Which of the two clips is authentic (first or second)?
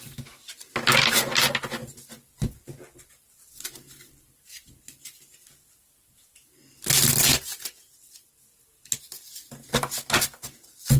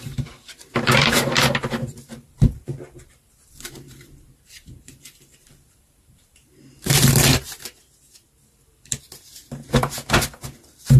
first